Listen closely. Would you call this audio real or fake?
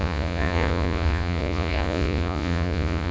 fake